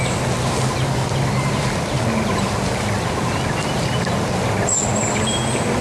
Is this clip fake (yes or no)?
no